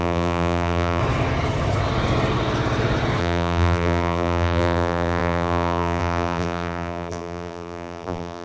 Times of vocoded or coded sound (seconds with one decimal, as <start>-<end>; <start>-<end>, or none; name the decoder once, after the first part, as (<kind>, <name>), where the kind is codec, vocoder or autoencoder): 0.0-1.0 (vocoder, BigVGAN v2); 3.2-8.4